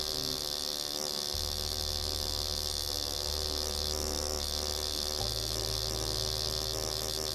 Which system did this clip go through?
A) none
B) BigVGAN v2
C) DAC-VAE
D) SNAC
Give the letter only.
A